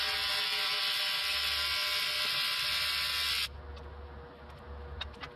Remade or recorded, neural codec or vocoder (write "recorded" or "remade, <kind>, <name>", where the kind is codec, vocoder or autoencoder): recorded